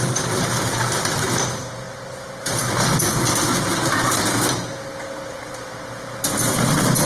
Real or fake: real